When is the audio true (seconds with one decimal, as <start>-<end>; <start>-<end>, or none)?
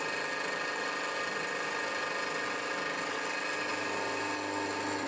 0.0-5.1